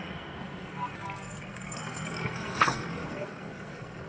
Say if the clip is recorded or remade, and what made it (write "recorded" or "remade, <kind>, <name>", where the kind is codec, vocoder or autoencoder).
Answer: remade, codec, SNAC